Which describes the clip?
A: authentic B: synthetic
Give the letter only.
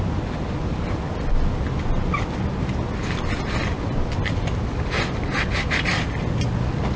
A